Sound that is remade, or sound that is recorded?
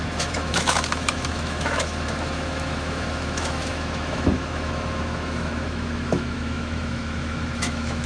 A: remade